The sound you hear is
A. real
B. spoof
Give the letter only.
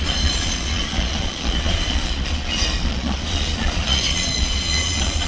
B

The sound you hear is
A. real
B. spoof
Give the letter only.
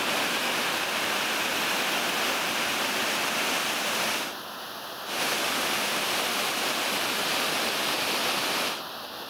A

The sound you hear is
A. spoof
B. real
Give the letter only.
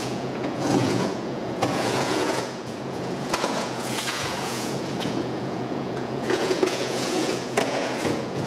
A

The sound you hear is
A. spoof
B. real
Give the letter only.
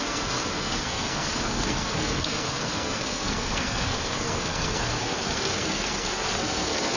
A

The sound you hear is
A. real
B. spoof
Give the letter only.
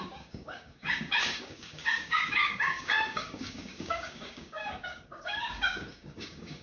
B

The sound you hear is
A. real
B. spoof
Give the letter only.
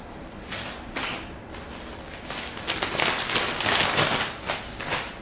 A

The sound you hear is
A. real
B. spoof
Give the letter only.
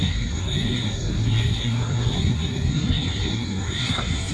B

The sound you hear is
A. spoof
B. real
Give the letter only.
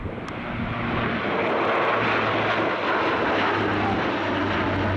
B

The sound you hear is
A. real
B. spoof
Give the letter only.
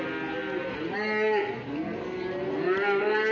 A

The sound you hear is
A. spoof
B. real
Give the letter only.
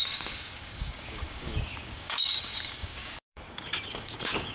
A